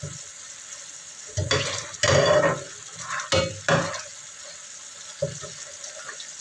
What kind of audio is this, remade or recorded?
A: recorded